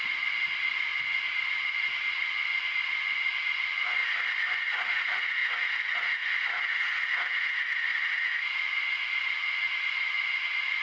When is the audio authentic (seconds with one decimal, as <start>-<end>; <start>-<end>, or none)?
4.0-4.6